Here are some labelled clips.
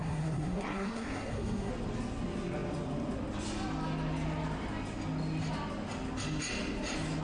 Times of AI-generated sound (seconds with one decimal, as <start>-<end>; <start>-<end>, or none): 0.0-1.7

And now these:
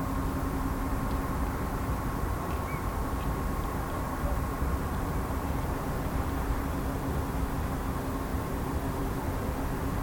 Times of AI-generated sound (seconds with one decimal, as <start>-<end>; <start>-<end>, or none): 1.9-6.8; 8.3-9.2

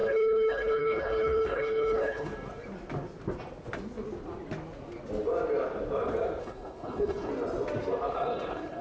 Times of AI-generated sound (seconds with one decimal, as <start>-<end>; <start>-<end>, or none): 0.0-2.3; 6.4-7.3; 8.1-8.8